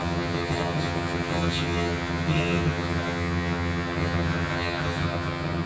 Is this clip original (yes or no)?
no